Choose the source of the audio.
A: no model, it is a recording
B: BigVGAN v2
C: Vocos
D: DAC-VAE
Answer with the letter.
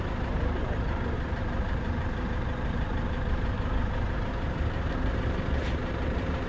B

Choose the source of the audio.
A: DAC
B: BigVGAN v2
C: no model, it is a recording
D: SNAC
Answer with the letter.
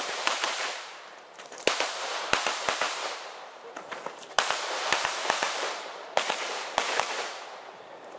B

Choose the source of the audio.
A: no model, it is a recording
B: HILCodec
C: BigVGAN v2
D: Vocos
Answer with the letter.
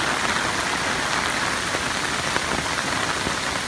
A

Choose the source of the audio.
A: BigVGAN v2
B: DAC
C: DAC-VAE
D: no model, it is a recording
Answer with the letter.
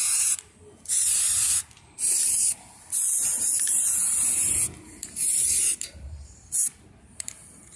A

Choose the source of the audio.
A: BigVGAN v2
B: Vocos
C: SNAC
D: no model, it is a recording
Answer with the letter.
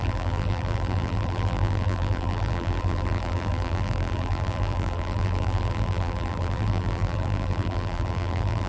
A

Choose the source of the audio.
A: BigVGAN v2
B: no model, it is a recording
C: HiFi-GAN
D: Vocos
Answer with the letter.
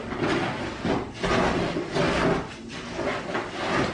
B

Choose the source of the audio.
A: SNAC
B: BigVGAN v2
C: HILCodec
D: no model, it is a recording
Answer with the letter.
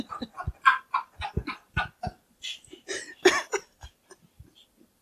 B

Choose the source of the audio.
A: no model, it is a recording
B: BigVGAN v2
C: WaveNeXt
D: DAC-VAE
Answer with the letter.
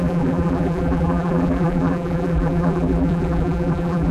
B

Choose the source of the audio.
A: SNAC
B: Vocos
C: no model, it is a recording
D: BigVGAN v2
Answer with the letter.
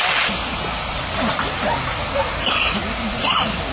D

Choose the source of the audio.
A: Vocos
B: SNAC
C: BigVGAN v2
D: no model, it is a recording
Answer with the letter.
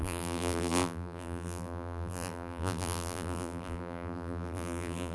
C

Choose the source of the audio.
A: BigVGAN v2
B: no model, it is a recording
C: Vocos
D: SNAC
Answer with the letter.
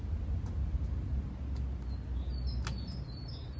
B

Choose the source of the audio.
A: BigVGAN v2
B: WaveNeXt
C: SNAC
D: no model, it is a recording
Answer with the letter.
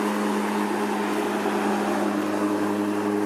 D